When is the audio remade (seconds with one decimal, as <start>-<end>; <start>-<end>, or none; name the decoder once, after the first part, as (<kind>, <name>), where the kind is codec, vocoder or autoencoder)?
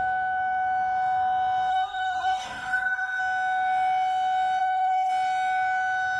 1.7-3.2 (codec, SNAC); 4.6-5.1